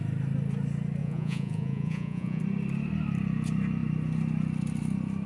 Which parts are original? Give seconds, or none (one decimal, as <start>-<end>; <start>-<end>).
0.0-1.0; 2.4-5.3